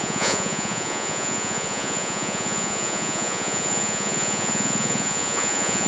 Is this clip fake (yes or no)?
yes